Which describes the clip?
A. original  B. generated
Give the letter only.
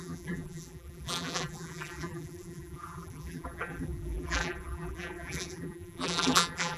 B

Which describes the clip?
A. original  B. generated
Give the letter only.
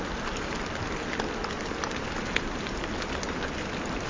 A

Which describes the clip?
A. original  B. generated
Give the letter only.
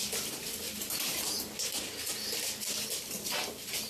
A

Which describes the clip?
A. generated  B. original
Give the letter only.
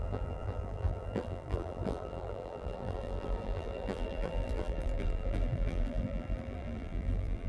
A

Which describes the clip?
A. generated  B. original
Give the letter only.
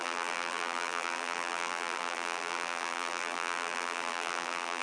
A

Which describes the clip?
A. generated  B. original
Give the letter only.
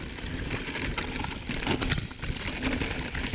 A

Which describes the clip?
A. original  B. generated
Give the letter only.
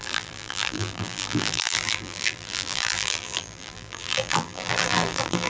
B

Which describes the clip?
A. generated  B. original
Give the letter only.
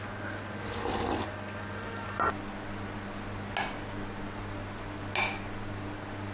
B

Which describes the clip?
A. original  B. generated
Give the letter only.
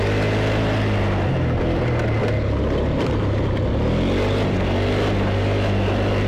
A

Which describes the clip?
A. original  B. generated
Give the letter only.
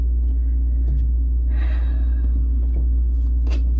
A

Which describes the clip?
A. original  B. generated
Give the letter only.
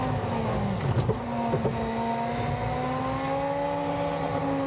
A